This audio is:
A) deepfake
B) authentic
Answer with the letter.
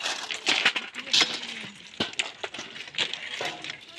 B